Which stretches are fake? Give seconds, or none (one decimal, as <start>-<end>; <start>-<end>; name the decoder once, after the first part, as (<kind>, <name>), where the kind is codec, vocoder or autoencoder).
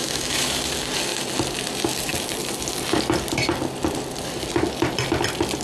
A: 0.0-0.6 (autoencoder, DAC-VAE)